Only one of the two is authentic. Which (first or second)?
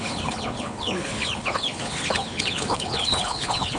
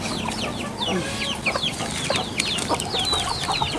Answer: second